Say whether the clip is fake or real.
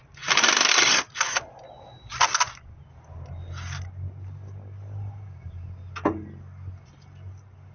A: real